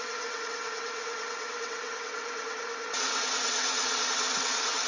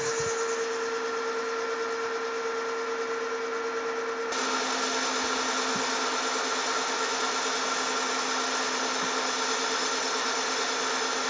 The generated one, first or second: first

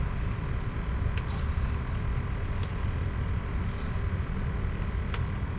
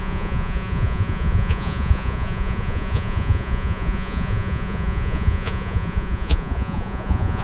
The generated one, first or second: second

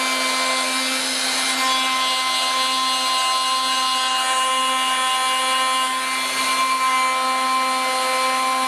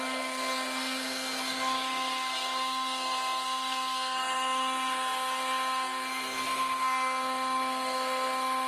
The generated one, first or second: second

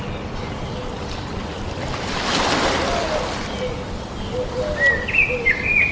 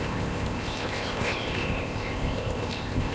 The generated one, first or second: second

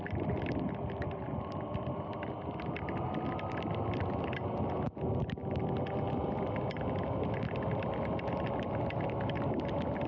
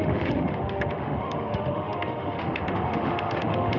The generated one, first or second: second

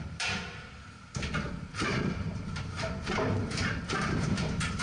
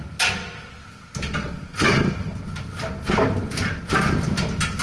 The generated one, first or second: first